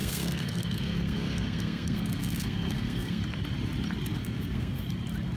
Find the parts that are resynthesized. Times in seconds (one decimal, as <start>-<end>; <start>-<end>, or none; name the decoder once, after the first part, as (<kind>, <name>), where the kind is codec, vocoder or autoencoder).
0.0-3.2 (codec, SNAC); 4.1-4.8